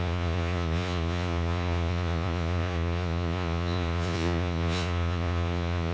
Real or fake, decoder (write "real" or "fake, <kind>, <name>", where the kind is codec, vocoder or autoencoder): fake, vocoder, Vocos